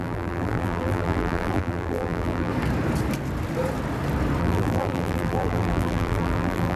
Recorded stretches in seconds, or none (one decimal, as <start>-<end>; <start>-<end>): 2.5-4.4